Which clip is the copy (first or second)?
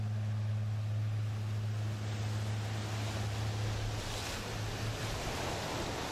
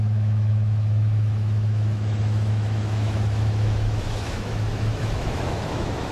second